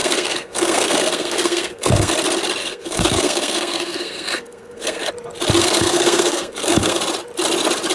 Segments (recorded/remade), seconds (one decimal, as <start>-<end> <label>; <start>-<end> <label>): 0.0-2.1 remade; 2.1-2.6 recorded; 2.6-5.1 remade; 5.1-5.6 recorded; 5.6-7.0 remade; 7.0-7.9 recorded